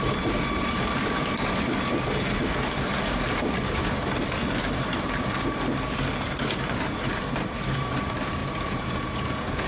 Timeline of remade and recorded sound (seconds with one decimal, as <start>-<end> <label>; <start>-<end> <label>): 0.0-8.4 recorded; 8.4-9.7 remade